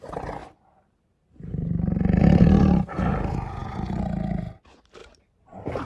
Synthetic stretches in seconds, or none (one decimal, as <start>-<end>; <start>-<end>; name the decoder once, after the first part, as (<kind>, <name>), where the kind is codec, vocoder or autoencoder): 0.4-2.6 (vocoder, BigVGAN v2); 5.0-5.9